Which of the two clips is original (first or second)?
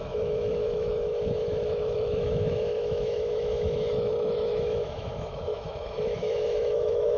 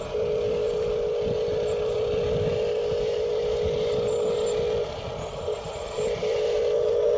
second